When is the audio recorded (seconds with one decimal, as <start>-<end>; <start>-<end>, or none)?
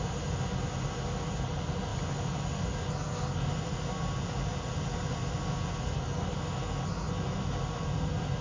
0.0-8.4